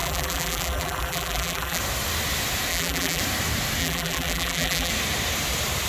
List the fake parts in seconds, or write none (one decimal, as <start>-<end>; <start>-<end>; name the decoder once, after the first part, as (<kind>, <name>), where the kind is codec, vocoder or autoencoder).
0.0-1.8 (vocoder, BigVGAN v2); 2.7-3.2; 3.8-4.9